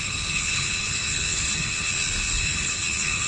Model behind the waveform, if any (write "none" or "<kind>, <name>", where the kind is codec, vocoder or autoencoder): codec, HILCodec